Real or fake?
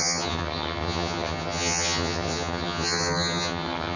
fake